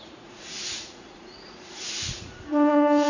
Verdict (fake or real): fake